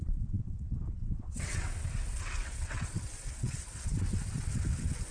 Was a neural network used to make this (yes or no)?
yes